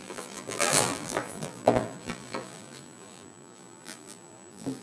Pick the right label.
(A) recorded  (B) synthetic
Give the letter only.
B